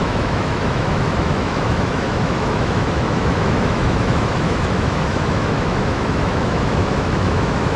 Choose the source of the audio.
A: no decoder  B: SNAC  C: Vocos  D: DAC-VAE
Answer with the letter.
D